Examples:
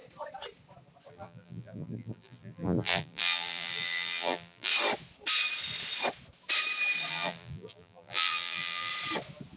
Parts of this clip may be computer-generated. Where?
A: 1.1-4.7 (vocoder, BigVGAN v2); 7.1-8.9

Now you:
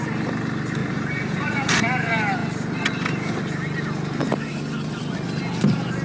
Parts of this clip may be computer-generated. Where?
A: 0.8-1.8 (vocoder, Vocos)

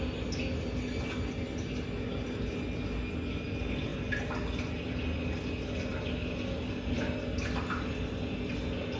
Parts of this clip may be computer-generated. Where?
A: none

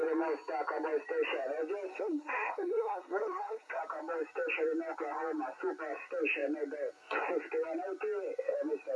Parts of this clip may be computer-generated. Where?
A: 1.9-3.8 (codec, SNAC)